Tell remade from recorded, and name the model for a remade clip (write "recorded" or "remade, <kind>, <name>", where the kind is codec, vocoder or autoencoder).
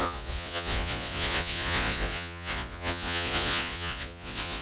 remade, vocoder, Vocos